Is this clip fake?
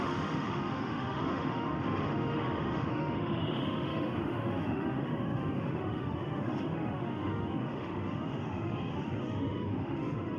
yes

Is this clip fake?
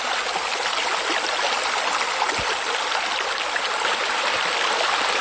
no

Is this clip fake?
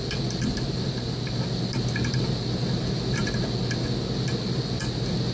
no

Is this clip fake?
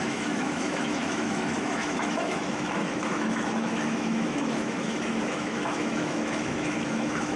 yes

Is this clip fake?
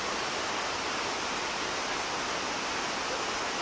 no